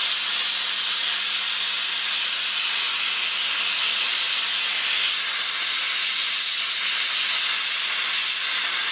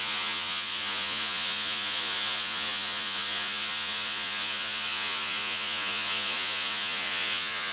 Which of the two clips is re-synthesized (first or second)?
second